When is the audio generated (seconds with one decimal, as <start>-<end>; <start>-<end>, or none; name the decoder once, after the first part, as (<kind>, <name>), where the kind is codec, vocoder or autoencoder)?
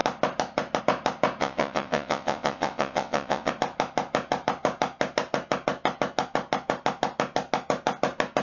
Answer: 1.4-3.5 (vocoder, WaveNeXt)